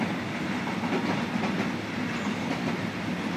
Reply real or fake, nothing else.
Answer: fake